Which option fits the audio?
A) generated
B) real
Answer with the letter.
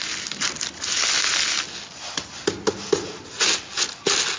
B